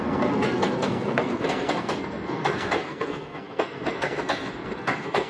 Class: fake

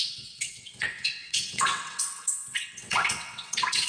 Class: fake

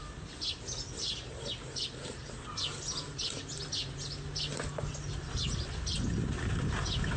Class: real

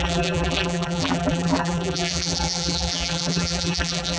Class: fake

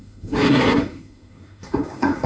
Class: fake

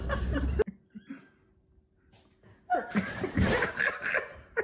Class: real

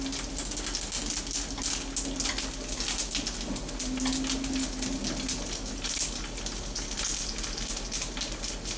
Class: real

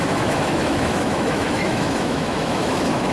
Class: fake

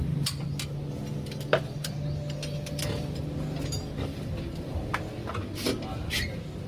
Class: real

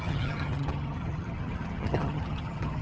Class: fake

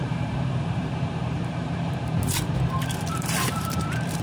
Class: fake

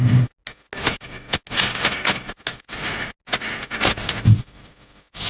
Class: real